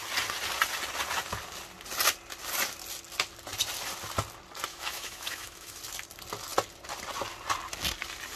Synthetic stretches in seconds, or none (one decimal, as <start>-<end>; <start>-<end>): 4.7-5.8